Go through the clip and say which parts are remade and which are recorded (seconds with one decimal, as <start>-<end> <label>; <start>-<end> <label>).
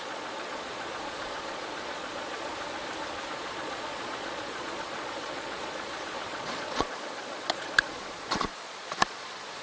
0.0-2.5 remade; 2.5-3.3 recorded; 3.3-9.6 remade